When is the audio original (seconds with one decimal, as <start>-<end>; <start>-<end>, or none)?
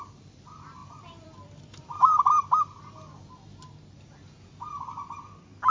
0.0-0.8; 2.3-5.7